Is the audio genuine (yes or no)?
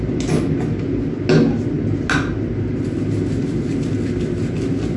yes